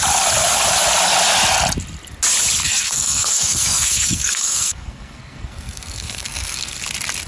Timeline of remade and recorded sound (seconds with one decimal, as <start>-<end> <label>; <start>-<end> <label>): 0.0-2.6 recorded; 2.6-6.8 remade; 6.8-7.3 recorded